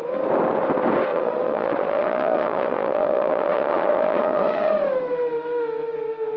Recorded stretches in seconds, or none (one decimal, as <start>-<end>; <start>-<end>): 0.0-1.1; 4.8-6.4